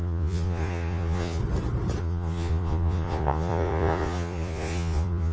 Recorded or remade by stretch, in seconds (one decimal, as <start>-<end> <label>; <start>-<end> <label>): 0.0-1.4 remade; 1.4-2.0 recorded; 2.0-5.3 remade